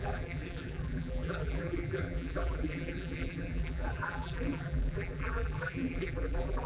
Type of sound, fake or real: fake